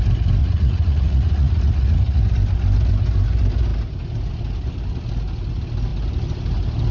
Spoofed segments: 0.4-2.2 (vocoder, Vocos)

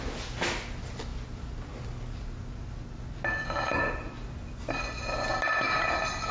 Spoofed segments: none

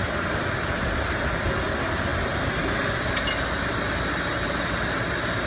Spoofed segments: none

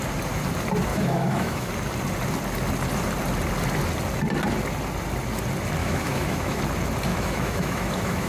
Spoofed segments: 0.9-1.7 (autoencoder, DAC-VAE); 5.8-6.6; 7.1-8.3

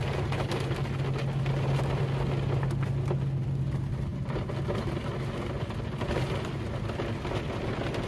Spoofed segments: none